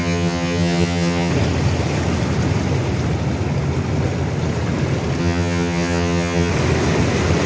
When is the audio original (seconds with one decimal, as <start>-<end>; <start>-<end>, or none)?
1.3-5.2; 6.5-7.5